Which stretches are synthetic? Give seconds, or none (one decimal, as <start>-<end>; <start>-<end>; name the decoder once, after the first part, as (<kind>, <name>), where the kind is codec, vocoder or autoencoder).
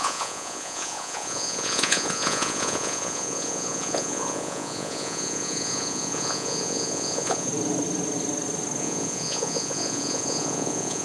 0.0-7.5 (vocoder, Vocos); 8.8-11.0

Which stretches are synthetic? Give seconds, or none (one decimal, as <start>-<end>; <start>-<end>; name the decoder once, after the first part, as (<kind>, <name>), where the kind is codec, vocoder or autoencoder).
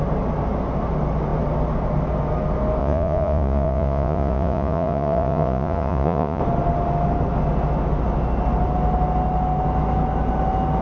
2.8-6.4 (vocoder, Vocos)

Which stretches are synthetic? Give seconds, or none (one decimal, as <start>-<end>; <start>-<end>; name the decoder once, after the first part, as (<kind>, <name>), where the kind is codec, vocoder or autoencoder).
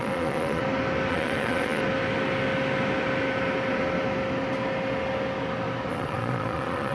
0.0-0.6 (vocoder, Vocos); 1.1-1.8; 5.9-6.9